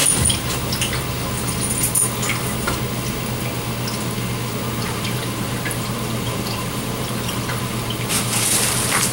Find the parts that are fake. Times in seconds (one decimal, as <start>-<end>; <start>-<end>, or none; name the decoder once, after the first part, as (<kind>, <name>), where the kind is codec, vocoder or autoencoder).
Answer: 4.8-9.1 (vocoder, BigVGAN v2)